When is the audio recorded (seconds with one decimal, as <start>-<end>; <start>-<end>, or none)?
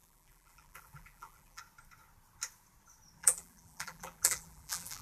1.6-3.2